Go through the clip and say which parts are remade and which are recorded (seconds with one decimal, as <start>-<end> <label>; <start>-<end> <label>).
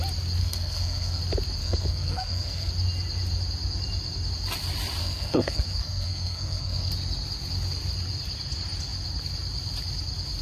0.0-0.4 recorded; 0.4-1.2 remade; 1.2-1.6 recorded; 1.6-2.7 remade; 2.7-5.0 recorded; 5.0-6.9 remade; 6.9-10.4 recorded